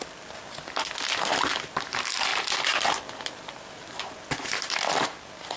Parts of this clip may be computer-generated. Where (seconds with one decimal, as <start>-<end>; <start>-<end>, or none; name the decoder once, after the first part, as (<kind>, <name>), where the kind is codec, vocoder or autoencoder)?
none